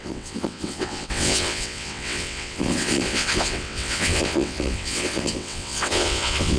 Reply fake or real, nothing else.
fake